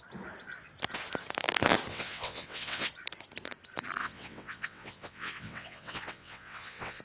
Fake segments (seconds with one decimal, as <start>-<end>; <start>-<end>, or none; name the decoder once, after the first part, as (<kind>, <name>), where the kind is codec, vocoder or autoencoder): 1.9-2.9 (vocoder, WaveNeXt); 4.0-7.0